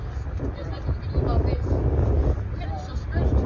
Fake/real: fake